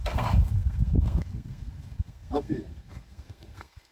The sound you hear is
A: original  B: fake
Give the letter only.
B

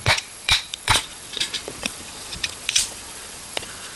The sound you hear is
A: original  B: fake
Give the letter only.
B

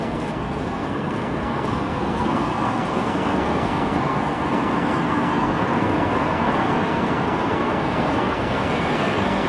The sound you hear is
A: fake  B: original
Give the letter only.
A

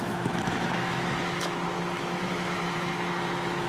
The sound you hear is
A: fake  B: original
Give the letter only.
A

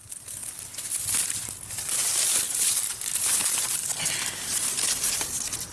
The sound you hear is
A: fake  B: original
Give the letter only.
B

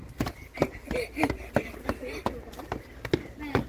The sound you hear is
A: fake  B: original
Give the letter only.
B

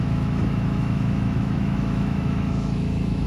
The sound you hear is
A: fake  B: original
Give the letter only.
A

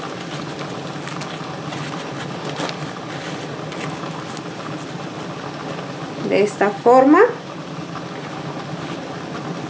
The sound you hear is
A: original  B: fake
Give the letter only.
A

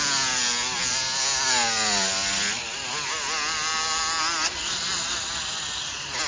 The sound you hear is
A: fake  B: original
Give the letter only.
B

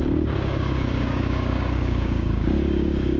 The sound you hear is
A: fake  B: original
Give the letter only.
A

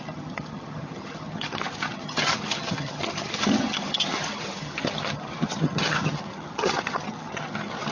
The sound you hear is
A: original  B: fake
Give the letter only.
B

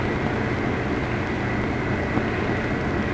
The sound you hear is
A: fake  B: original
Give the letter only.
B